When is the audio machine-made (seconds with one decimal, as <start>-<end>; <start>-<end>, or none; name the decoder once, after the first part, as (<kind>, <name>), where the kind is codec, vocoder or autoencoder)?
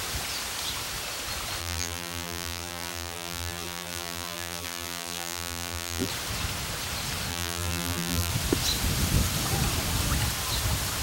1.6-6.1 (vocoder, BigVGAN v2); 7.3-8.3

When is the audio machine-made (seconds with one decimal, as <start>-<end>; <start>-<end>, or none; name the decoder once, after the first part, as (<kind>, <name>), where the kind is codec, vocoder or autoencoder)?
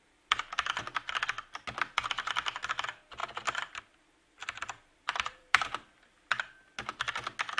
3.2-3.8 (vocoder, BigVGAN v2); 4.4-7.1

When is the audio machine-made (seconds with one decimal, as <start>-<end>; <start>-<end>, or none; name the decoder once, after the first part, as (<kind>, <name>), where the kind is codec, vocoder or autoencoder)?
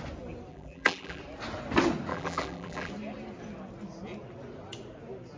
0.5-1.2 (vocoder, BigVGAN v2); 2.1-2.9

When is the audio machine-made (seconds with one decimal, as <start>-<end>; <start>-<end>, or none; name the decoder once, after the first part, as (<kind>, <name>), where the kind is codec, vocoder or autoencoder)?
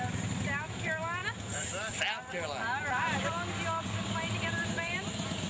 none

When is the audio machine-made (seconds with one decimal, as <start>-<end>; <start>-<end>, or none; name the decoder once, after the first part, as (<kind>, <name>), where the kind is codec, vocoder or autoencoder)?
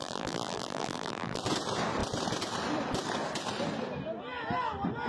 0.0-1.4 (vocoder, BigVGAN v2)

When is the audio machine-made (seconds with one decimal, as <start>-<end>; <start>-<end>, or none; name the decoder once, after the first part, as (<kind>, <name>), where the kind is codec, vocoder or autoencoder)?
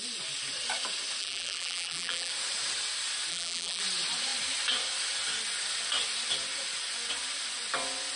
1.2-2.3 (vocoder, BigVGAN v2); 3.3-3.8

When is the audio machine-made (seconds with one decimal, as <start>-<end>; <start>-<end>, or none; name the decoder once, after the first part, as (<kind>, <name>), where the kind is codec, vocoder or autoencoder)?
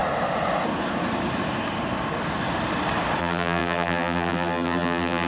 3.2-5.3 (vocoder, BigVGAN v2)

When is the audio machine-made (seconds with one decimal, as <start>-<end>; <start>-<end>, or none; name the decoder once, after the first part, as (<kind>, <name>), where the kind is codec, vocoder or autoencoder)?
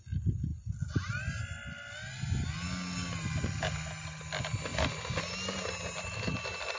none